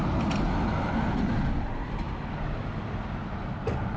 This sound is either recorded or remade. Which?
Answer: recorded